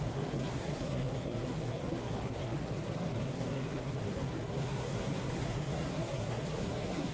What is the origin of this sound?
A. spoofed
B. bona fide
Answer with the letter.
A